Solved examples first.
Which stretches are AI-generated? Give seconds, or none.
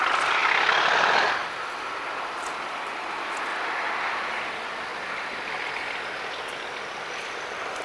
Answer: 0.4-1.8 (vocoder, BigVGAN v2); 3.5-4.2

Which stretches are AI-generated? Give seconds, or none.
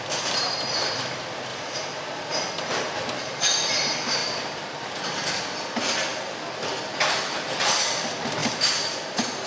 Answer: 1.5-2.5 (vocoder, BigVGAN v2); 4.2-5.0; 8.4-9.0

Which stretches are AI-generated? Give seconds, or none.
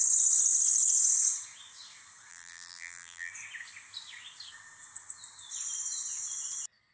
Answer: 2.3-3.3 (vocoder, BigVGAN v2)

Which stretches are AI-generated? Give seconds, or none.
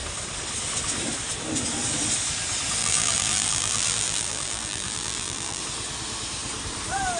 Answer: 2.8-5.6 (vocoder, BigVGAN v2)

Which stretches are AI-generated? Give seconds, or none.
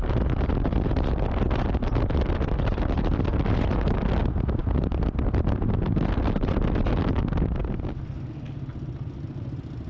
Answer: none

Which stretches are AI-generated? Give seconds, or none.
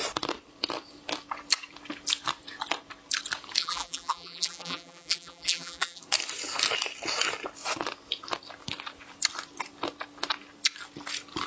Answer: 3.6-6.0 (vocoder, BigVGAN v2)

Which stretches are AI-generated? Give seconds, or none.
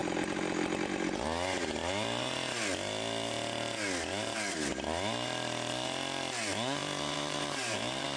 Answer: 6.8-8.2 (vocoder, BigVGAN v2)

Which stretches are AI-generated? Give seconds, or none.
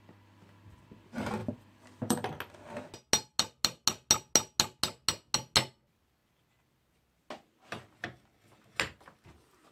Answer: 1.4-2.4 (vocoder, BigVGAN v2)